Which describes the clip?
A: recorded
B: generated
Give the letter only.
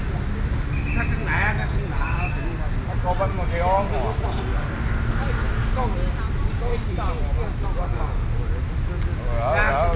A